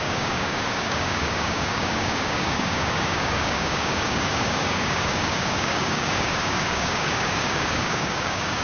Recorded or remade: remade